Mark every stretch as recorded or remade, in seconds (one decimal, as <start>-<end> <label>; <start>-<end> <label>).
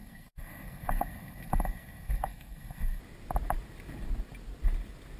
0.0-3.0 remade; 3.0-5.2 recorded